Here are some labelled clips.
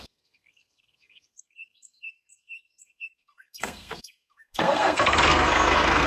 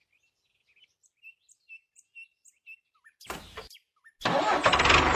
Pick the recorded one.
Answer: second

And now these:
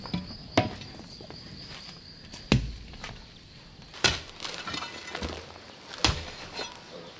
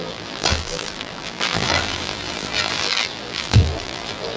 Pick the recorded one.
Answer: first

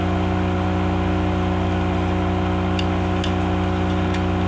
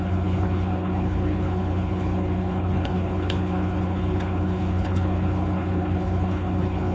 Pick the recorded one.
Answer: first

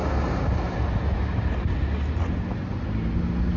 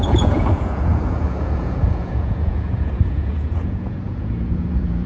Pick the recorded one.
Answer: first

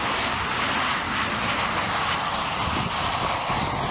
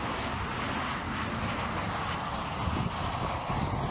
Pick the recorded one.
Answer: second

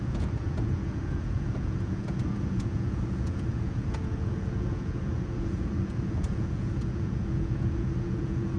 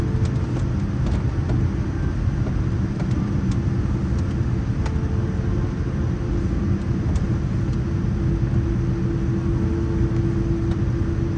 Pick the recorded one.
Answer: second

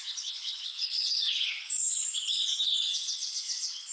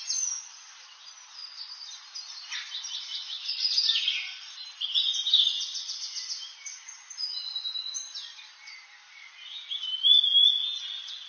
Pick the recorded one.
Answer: second